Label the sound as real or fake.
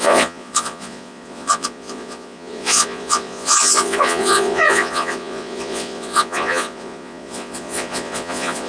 fake